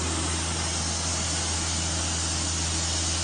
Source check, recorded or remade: recorded